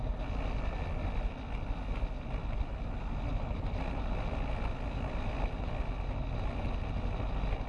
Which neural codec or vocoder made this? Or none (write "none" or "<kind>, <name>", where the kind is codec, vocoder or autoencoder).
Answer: none